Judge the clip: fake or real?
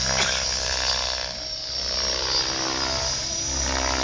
real